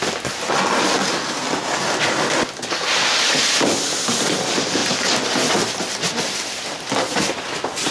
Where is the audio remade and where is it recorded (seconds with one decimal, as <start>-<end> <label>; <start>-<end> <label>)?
0.0-7.9 recorded